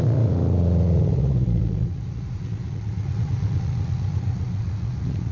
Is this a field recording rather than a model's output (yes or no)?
no